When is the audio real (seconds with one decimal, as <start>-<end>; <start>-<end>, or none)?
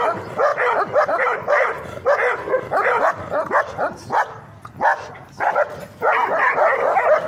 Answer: 0.0-4.9; 5.6-7.3